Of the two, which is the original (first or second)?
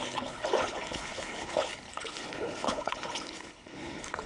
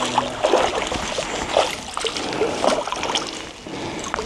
second